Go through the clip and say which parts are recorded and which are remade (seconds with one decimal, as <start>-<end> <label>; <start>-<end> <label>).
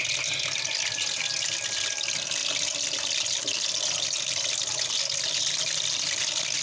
0.0-6.6 recorded